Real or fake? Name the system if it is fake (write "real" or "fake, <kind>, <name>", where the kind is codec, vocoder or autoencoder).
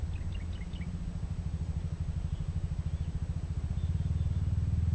real